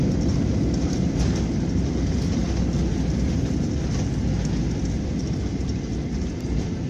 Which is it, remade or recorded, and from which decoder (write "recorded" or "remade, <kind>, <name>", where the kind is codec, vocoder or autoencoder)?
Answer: recorded